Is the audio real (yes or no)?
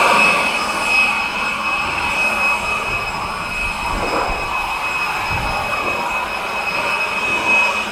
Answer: yes